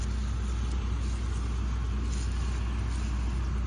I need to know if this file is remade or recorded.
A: recorded